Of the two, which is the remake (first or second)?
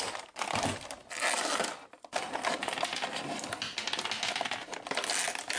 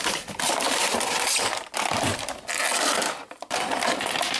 second